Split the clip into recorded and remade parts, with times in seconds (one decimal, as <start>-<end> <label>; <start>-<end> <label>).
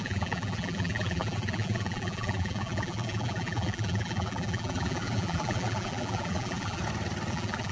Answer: 0.0-6.8 remade; 6.8-7.3 recorded; 7.3-7.7 remade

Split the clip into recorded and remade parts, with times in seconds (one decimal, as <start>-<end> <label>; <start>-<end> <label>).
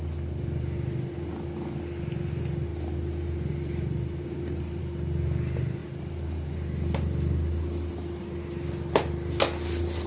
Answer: 0.0-10.1 recorded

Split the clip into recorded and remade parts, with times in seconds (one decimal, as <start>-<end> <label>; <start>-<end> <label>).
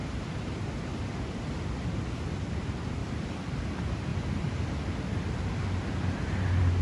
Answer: 0.0-3.0 recorded; 3.0-3.6 remade; 3.6-6.8 recorded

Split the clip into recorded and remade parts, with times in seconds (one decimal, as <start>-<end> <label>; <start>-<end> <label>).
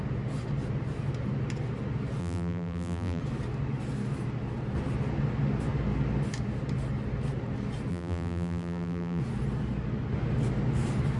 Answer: 0.0-2.2 recorded; 2.2-3.2 remade; 3.2-7.9 recorded; 7.9-9.2 remade; 9.2-11.2 recorded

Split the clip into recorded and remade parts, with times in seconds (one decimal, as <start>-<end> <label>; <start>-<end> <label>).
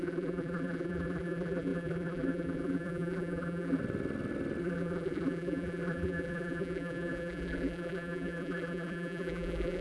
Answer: 0.0-3.8 remade; 3.8-4.6 recorded; 4.6-9.8 remade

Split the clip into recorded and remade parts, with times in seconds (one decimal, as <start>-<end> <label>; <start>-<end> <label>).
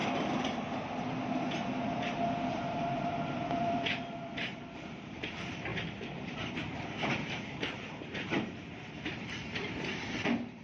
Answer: 0.0-4.7 recorded; 4.7-10.6 remade